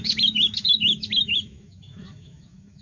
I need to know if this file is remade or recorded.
remade